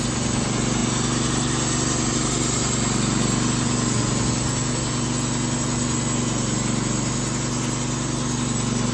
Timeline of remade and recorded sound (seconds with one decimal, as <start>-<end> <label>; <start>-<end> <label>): 0.0-8.9 recorded